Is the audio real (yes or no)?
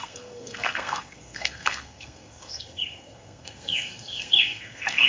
no